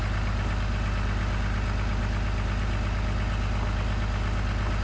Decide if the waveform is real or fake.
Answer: real